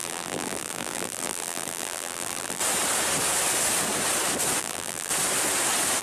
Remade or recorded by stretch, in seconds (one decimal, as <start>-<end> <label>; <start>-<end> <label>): 0.0-2.6 remade; 2.6-4.6 recorded; 4.6-5.1 remade; 5.1-6.0 recorded